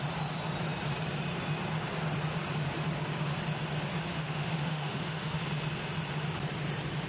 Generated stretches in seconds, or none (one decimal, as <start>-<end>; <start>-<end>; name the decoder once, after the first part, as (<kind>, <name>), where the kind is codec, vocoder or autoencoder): 4.1-5.4 (autoencoder, DAC-VAE)